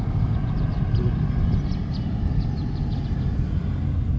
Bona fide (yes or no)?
yes